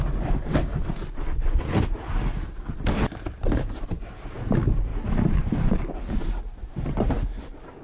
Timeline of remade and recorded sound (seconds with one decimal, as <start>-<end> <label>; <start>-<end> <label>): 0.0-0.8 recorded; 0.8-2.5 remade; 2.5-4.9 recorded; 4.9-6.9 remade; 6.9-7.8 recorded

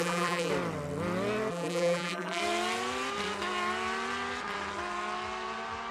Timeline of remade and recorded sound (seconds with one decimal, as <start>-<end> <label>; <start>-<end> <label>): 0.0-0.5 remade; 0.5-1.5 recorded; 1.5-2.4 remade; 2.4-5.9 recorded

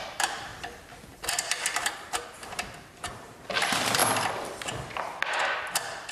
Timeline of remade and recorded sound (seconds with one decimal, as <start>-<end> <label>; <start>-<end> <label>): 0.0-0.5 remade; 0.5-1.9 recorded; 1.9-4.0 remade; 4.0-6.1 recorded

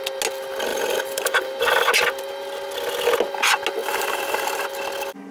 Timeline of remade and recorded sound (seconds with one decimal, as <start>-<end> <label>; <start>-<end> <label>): 0.0-0.7 recorded; 0.7-1.6 remade; 1.6-3.8 recorded; 3.8-4.7 remade; 4.7-5.3 recorded

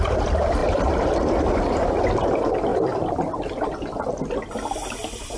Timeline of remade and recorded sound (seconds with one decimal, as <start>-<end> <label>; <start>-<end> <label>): 0.0-0.6 recorded; 0.6-1.4 remade; 1.4-2.7 recorded; 2.7-4.2 remade; 4.2-5.4 recorded